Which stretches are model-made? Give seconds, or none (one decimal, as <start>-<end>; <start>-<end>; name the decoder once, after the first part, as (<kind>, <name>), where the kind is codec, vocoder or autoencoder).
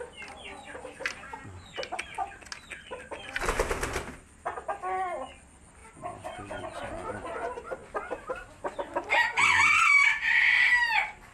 none